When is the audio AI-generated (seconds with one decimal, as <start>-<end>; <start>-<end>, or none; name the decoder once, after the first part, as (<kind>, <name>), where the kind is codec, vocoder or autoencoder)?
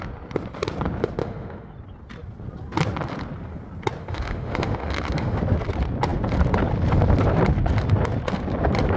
1.2-1.7 (autoencoder, DAC-VAE); 4.0-5.4